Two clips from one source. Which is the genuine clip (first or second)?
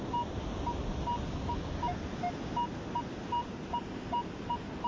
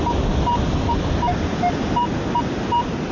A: first